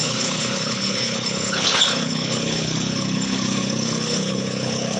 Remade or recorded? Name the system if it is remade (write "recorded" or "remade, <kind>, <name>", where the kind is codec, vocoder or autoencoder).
remade, codec, HILCodec